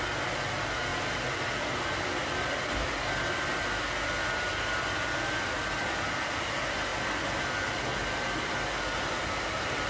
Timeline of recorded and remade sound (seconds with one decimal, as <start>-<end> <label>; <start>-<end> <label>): 0.0-9.9 recorded